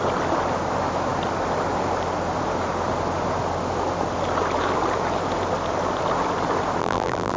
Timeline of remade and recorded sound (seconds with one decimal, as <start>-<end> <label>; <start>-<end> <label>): 0.0-6.8 recorded; 6.8-7.4 remade